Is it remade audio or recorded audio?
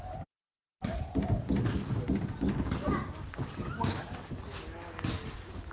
recorded